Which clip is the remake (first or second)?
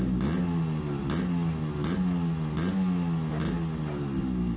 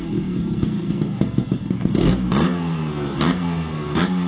second